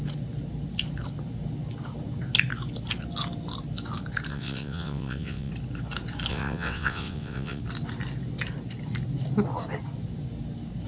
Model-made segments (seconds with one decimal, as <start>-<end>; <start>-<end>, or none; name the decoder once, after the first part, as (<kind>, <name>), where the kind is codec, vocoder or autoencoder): 4.3-5.5 (vocoder, WaveNeXt); 6.3-7.6